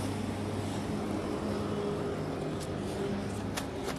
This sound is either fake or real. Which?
real